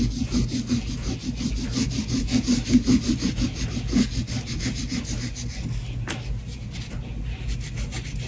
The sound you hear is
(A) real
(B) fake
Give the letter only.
A